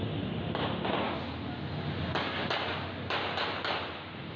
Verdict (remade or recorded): recorded